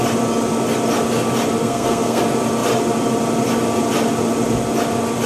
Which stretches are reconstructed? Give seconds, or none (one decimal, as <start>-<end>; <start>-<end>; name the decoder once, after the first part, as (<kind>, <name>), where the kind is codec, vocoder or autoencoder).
1.6-2.2 (codec, SNAC)